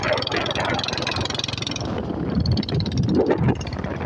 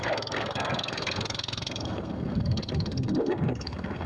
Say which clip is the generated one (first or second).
second